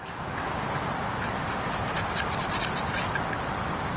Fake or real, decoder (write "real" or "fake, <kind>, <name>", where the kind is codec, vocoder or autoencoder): real